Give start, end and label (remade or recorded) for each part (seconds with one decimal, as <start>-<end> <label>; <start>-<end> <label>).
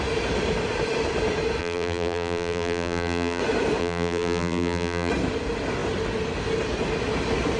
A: 0.0-1.6 recorded; 1.6-3.4 remade; 3.4-3.8 recorded; 3.8-5.1 remade; 5.1-7.6 recorded